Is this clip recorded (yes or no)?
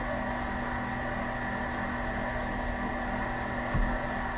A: yes